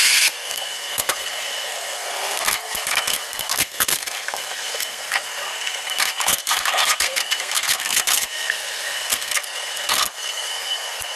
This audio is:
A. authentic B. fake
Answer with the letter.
B